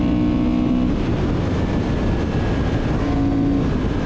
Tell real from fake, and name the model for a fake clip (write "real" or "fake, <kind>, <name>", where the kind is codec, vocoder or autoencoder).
real